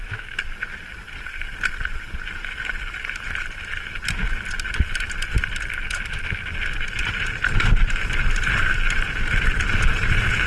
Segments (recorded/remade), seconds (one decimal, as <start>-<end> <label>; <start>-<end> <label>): 0.0-10.5 recorded